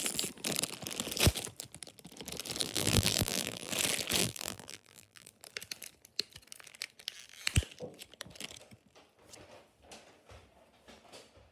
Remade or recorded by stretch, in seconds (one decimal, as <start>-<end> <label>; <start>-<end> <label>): 0.0-2.6 recorded; 2.6-3.7 remade; 3.7-4.2 recorded; 4.2-5.3 remade; 5.3-11.5 recorded